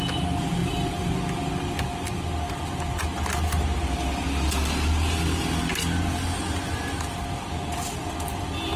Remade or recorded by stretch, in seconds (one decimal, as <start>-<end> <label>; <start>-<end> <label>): 0.0-8.8 recorded